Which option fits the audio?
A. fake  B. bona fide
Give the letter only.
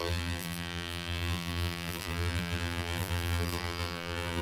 A